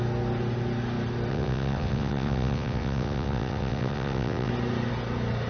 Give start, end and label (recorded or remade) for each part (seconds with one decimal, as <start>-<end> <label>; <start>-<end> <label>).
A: 0.0-1.3 recorded; 1.3-4.5 remade; 4.5-5.5 recorded